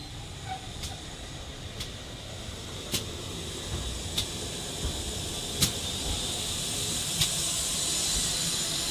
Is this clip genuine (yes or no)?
yes